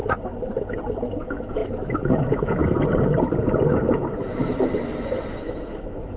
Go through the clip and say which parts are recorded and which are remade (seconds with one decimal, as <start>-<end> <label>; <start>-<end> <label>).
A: 0.0-1.1 recorded; 1.1-2.6 remade; 2.6-3.7 recorded; 3.7-4.4 remade; 4.4-5.3 recorded; 5.3-6.2 remade